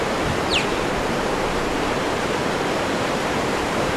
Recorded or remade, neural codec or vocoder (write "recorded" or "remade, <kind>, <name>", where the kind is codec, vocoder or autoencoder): remade, vocoder, BigVGAN v2